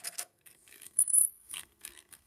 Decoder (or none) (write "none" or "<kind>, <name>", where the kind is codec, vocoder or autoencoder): codec, SNAC